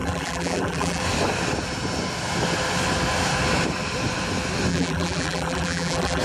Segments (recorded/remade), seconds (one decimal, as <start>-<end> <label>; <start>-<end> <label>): 0.0-1.0 remade; 1.0-4.7 recorded; 4.7-6.2 remade